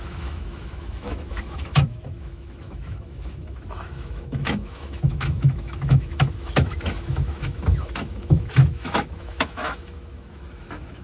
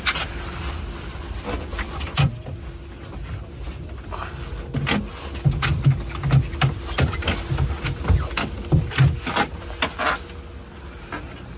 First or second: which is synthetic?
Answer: first